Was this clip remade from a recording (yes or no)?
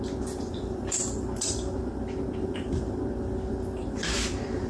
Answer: yes